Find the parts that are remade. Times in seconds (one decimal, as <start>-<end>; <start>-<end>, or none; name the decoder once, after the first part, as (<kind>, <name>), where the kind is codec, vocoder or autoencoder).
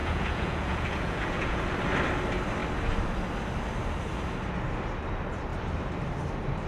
0.0-1.6 (vocoder, Vocos)